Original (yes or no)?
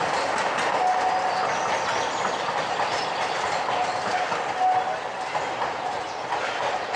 yes